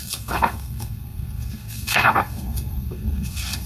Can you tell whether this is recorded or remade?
remade